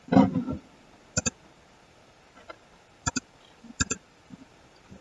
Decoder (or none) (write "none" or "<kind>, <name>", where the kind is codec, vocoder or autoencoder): vocoder, BigVGAN v2